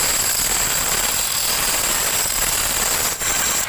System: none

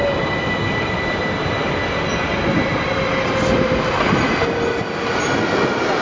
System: none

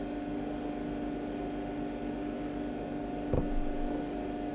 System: none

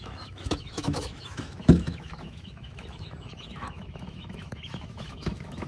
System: autoencoder, DAC-VAE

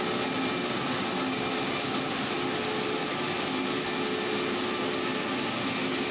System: none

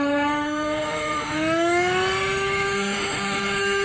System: autoencoder, DAC-VAE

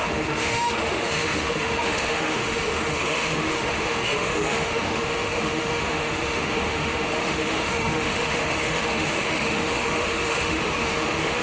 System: autoencoder, DAC-VAE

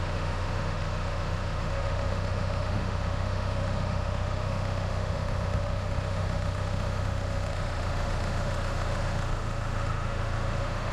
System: autoencoder, DAC-VAE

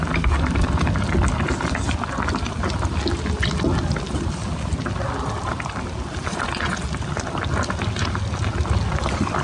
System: none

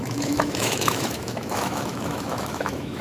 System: autoencoder, DAC-VAE